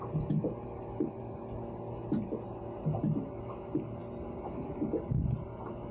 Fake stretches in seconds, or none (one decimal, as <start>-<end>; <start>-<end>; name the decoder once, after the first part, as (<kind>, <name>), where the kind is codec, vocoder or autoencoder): none